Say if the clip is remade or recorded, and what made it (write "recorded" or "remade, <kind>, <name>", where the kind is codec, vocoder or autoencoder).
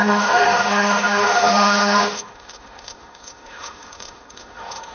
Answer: remade, autoencoder, DAC-VAE